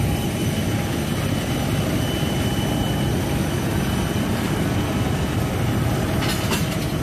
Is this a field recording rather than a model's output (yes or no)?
yes